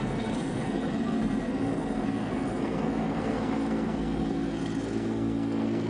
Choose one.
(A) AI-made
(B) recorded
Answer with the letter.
A